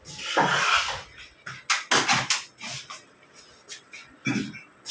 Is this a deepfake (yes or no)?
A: no